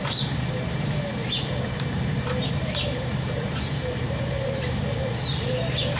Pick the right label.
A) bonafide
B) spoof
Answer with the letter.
B